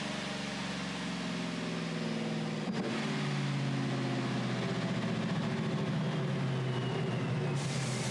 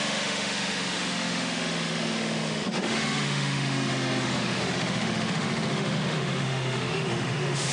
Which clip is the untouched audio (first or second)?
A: first